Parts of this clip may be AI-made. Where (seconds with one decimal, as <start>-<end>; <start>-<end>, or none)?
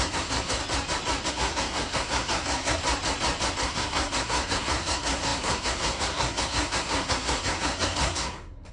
0.0-0.6; 1.3-2.8; 3.6-8.7